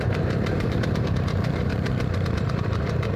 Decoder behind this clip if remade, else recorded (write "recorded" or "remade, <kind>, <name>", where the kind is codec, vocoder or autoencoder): remade, vocoder, BigVGAN v2